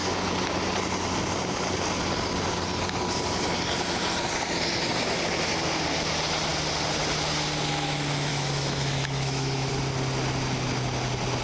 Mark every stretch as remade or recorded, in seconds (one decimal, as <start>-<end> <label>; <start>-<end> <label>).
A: 0.0-8.3 recorded; 8.3-9.7 remade; 9.7-11.4 recorded